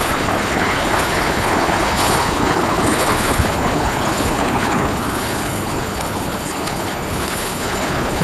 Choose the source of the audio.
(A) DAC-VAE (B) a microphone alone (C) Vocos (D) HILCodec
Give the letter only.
D